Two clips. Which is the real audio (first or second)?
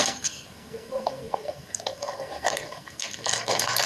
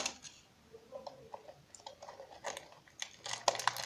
second